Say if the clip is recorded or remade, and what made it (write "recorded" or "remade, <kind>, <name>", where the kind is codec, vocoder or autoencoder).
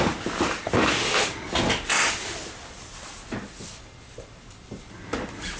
recorded